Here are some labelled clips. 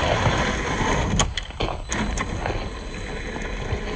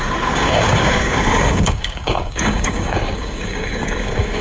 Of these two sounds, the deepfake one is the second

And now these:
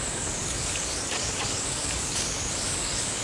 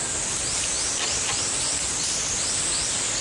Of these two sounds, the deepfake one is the first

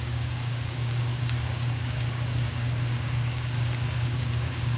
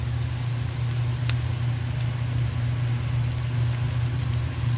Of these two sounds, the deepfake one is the first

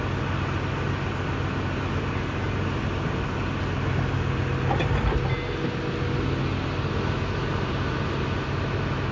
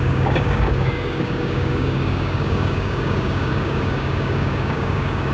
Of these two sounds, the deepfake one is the second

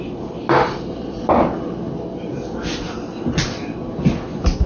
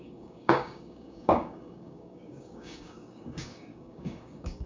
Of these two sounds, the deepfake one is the second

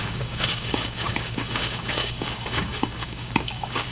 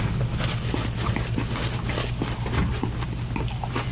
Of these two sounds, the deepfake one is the first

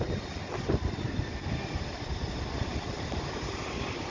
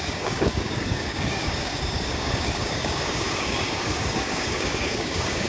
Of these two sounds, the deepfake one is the second